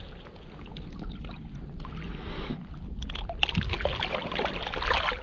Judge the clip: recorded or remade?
recorded